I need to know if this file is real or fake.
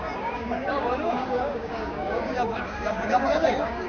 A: fake